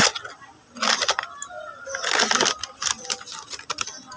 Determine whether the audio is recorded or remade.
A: recorded